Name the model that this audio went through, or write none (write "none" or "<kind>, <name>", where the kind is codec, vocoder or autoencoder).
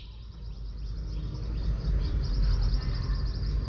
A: none